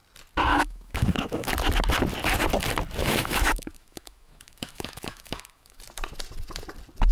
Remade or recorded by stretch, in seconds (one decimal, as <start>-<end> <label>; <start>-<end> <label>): 0.0-0.5 recorded; 0.5-1.5 remade; 1.5-3.0 recorded; 3.0-5.8 remade; 5.8-7.1 recorded